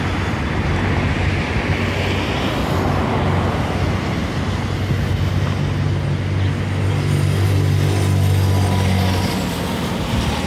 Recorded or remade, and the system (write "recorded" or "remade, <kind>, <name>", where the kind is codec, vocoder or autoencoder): recorded